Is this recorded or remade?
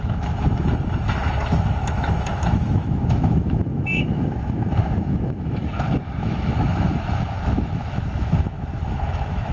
remade